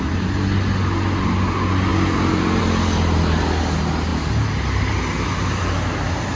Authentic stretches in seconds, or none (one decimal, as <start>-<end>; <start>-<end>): 0.0-6.4